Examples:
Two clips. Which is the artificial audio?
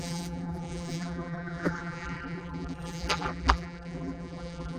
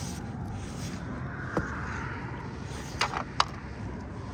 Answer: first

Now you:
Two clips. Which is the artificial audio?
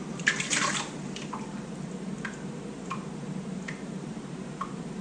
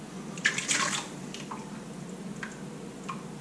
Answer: first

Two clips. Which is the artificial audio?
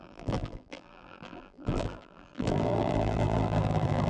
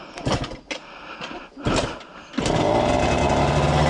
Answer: first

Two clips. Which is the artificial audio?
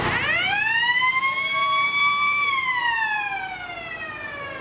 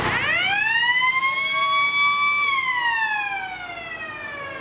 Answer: first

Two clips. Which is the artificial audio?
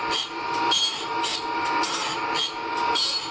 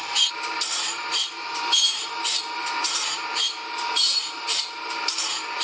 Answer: second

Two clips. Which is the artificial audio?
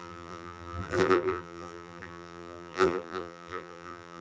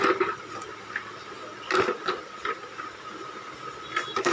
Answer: first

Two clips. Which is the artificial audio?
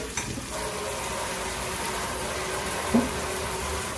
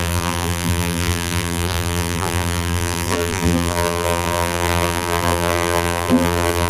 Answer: second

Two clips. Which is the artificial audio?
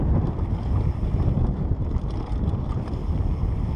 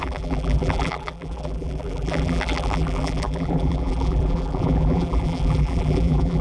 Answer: second